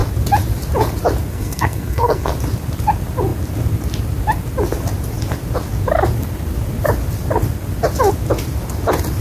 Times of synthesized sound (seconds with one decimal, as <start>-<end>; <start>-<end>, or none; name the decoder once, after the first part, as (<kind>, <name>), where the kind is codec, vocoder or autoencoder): 1.3-2.3 (codec, SNAC)

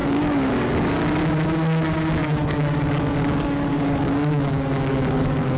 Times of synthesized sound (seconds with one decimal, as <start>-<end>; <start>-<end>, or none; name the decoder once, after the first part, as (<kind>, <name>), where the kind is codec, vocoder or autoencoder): 0.0-1.0 (codec, DAC); 2.2-5.6

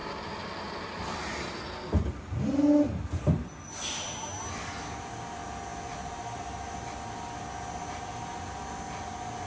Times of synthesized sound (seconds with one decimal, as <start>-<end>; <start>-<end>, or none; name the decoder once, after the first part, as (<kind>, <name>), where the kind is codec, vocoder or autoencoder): none

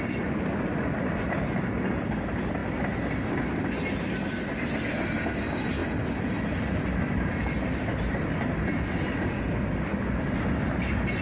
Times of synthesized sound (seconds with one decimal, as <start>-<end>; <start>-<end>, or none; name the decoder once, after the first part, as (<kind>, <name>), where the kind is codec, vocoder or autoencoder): none

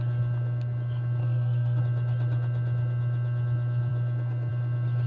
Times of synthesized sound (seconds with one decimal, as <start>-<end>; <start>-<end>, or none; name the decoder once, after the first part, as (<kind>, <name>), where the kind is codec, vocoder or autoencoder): 1.2-1.8 (codec, SNAC)

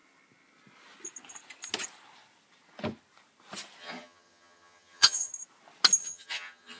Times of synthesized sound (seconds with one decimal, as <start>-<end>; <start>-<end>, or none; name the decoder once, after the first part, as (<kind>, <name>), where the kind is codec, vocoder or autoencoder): 3.8-5.3 (vocoder, HiFi-GAN); 6.0-6.8

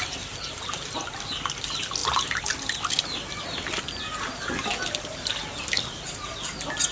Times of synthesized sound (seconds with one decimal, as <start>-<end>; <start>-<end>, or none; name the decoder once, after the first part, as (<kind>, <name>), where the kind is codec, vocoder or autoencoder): none